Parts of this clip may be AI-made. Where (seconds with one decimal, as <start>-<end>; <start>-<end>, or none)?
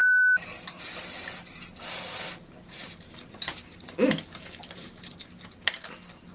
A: none